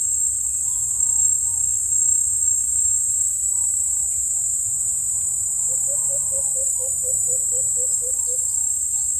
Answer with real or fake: fake